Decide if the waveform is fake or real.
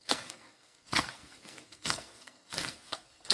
fake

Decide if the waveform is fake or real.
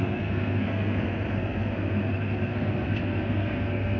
fake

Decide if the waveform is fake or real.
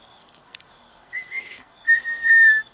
fake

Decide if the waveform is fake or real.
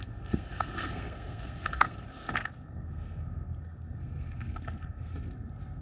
fake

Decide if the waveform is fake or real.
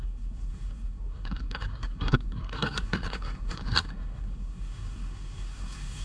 fake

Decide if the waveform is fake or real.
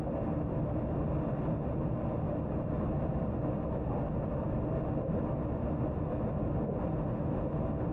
real